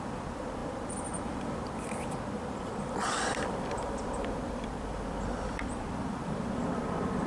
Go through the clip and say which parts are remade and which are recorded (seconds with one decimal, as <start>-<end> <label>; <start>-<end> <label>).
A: 0.0-7.3 remade